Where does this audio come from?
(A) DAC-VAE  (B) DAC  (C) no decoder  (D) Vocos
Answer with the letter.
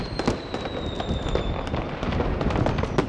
C